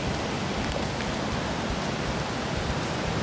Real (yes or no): yes